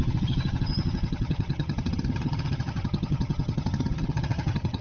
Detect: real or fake fake